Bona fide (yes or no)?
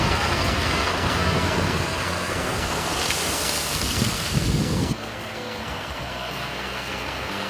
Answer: no